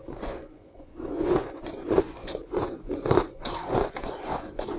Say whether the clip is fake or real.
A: fake